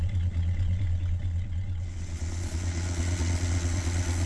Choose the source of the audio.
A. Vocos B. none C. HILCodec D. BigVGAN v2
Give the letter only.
A